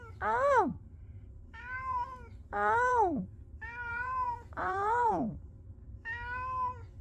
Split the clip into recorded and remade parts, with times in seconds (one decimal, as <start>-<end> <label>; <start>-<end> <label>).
0.0-0.7 recorded; 0.7-3.2 remade; 3.2-3.9 recorded; 3.9-5.6 remade; 5.6-7.0 recorded